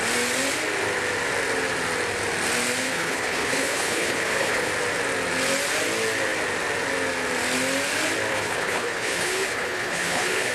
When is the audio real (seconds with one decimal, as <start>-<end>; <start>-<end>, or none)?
0.0-2.8; 4.7-8.3